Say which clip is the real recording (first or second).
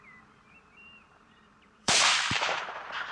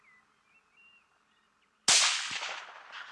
second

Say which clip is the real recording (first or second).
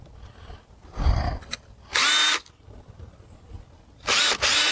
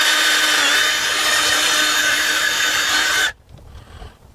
first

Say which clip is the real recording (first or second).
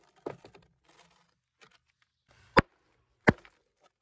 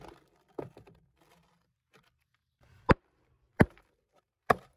first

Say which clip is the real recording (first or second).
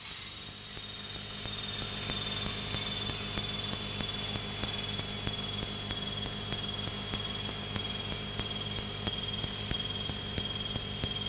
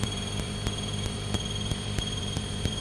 first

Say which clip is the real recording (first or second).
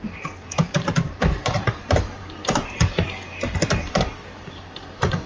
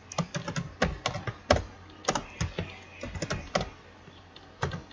second